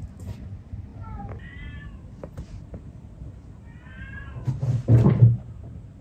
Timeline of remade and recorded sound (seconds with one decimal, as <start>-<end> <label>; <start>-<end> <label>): 0.0-6.0 recorded